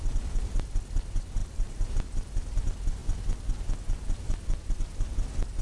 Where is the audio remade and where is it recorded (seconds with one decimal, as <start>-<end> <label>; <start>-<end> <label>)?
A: 0.0-1.4 recorded; 1.4-1.9 remade; 1.9-5.6 recorded